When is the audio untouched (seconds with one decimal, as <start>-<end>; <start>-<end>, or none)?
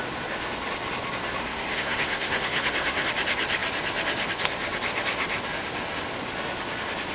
0.0-1.4; 3.1-7.1